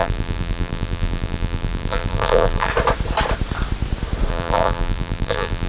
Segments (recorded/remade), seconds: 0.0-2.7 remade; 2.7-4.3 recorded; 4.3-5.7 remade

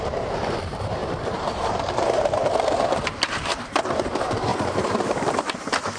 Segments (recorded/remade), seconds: 0.0-2.4 remade; 2.4-3.0 recorded; 3.0-6.0 remade

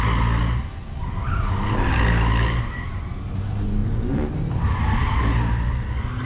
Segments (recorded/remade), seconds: 0.0-6.3 recorded

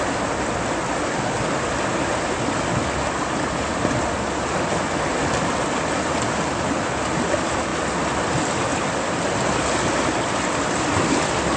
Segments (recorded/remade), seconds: 0.0-1.9 recorded; 1.9-2.8 remade; 2.8-11.6 recorded

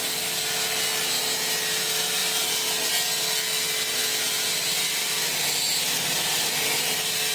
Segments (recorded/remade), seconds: 0.0-4.9 recorded; 4.9-5.5 remade; 5.5-7.3 recorded

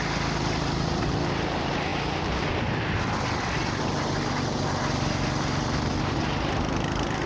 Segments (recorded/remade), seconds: 0.0-7.3 recorded

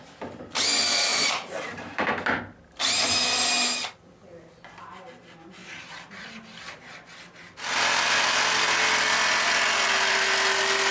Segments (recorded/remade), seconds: 0.0-1.1 recorded; 1.1-2.4 remade; 2.4-10.9 recorded

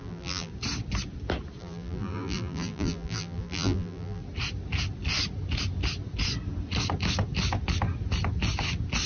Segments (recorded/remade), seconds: 0.0-0.5 remade; 0.5-1.6 recorded; 1.6-4.2 remade; 4.2-9.1 recorded